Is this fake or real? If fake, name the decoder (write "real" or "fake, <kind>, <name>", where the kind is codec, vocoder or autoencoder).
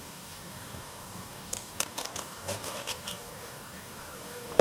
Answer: fake, codec, DAC